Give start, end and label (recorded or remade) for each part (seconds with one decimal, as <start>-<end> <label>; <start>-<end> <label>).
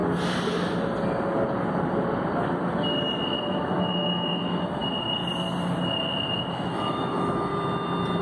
0.0-3.4 recorded; 3.4-4.8 remade; 4.8-6.5 recorded; 6.5-7.5 remade; 7.5-8.2 recorded